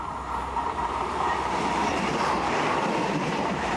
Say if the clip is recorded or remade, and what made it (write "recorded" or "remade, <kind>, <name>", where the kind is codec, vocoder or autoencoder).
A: remade, vocoder, BigVGAN v2